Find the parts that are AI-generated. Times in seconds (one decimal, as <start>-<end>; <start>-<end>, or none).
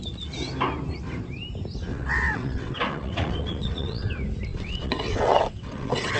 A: 1.9-4.1; 4.5-6.2